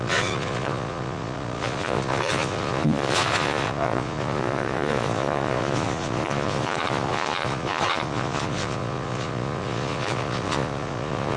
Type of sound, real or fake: fake